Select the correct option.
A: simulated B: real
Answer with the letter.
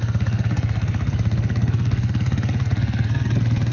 A